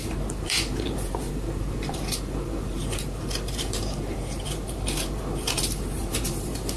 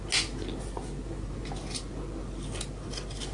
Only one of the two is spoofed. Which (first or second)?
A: first